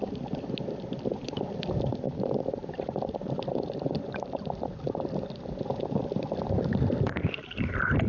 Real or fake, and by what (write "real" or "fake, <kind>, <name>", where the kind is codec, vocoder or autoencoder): fake, vocoder, BigVGAN v2